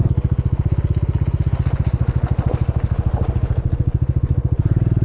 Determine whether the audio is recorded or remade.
recorded